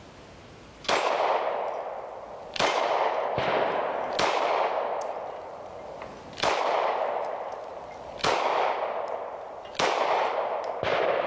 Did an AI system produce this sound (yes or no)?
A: no